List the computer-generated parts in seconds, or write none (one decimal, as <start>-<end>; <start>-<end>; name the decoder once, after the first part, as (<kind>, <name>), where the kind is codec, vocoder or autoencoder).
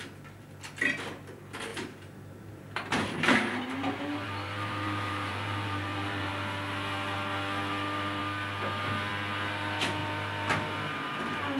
1.7-6.3 (vocoder, BigVGAN v2)